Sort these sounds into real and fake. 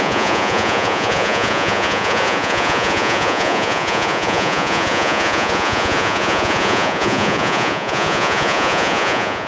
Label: fake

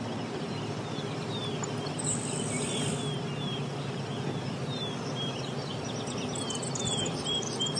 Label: real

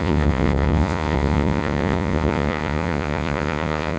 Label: fake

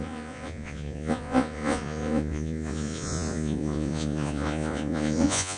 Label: fake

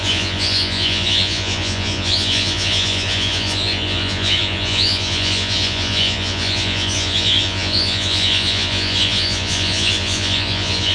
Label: fake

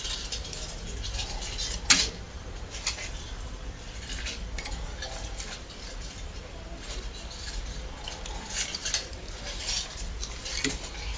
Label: real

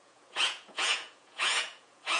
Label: fake